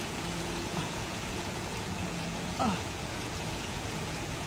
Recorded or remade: remade